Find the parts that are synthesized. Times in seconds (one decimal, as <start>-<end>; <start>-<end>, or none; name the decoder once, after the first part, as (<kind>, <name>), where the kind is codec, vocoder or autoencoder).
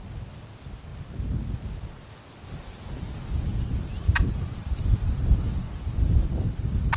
none